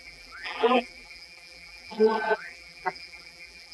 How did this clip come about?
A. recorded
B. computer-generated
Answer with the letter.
B